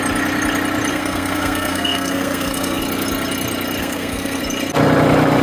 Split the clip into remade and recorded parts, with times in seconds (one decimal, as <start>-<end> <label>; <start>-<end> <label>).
0.0-0.9 recorded; 0.9-2.8 remade; 2.8-3.8 recorded; 3.8-4.4 remade; 4.4-5.4 recorded

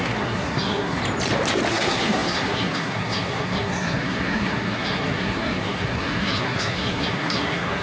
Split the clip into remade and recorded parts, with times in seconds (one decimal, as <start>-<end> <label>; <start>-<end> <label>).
0.0-1.0 remade; 1.0-1.7 recorded; 1.7-7.8 remade

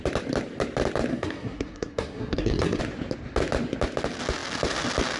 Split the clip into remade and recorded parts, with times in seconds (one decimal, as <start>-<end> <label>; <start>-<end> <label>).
0.0-1.1 recorded; 1.1-2.8 remade; 2.8-5.2 recorded

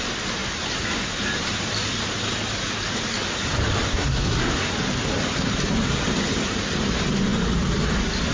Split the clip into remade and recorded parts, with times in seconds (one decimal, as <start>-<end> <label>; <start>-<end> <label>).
0.0-3.9 recorded; 3.9-4.7 remade; 4.7-8.3 recorded

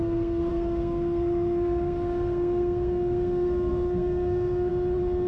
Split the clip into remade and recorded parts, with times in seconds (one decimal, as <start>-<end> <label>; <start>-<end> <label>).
0.0-4.7 remade; 4.7-5.3 recorded